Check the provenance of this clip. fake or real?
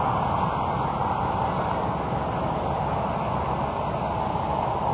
real